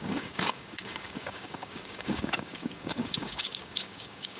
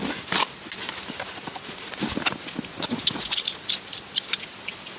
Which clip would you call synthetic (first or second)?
first